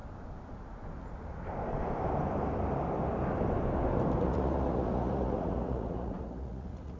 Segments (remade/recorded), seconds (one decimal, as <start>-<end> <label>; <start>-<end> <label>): 0.0-4.2 recorded; 4.2-7.0 remade